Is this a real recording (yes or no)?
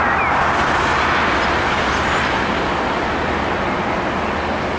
yes